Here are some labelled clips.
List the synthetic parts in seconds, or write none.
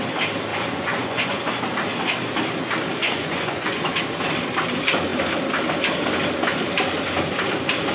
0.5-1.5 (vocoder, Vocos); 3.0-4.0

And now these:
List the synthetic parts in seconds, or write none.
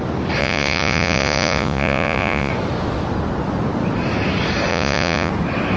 0.4-2.5 (vocoder, Vocos); 4.7-5.3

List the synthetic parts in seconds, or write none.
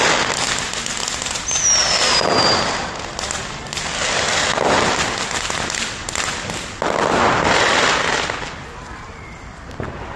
none